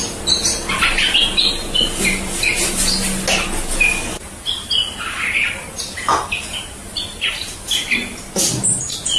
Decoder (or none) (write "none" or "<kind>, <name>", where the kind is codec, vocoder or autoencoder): none